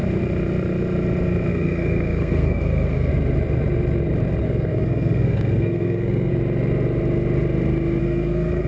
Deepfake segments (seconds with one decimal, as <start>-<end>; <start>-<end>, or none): 1.5-3.1; 4.4-6.3; 8.0-8.7